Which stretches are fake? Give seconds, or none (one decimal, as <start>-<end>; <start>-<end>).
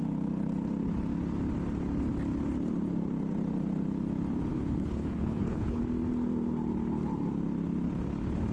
4.5-5.8